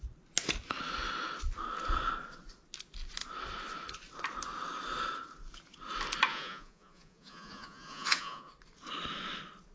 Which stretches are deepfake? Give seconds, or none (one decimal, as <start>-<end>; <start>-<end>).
6.3-8.5